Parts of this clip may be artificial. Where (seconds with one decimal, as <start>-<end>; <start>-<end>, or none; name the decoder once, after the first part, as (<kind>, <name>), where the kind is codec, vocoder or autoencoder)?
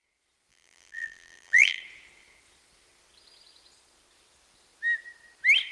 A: 0.5-1.8 (vocoder, BigVGAN v2)